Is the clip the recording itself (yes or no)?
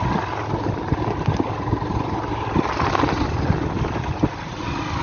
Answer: yes